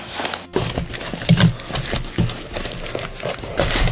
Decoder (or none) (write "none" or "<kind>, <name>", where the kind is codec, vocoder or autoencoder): none